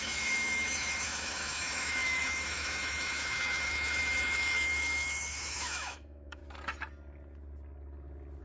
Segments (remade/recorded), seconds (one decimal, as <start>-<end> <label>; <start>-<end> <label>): 0.0-6.4 remade; 6.4-8.4 recorded

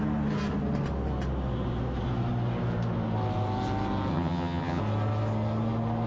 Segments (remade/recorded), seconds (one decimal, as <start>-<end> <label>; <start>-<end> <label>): 0.0-4.1 recorded; 4.1-4.8 remade; 4.8-6.1 recorded

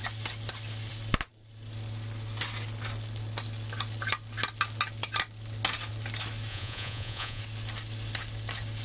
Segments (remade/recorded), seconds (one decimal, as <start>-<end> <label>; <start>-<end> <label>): 0.0-6.5 recorded; 6.5-7.4 remade; 7.4-8.8 recorded

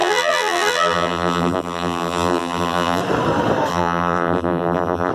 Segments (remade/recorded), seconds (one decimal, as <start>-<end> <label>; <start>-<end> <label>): 0.0-3.0 remade; 3.0-3.7 recorded; 3.7-5.1 remade

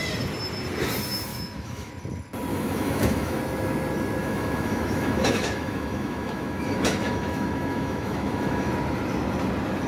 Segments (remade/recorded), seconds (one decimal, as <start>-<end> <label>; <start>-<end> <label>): 0.0-1.3 recorded; 1.3-1.9 remade; 1.9-2.5 recorded; 2.5-3.4 remade; 3.4-4.2 recorded; 4.2-8.7 remade; 8.7-9.9 recorded

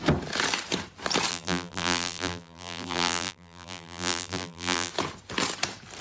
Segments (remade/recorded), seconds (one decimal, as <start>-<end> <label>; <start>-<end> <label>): 0.0-1.3 recorded; 1.3-4.9 remade; 4.9-6.0 recorded